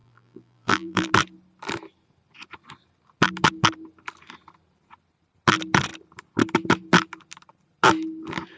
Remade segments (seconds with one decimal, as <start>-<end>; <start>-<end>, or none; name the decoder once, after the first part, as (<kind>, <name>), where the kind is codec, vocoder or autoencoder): 0.0-1.1 (vocoder, BigVGAN v2)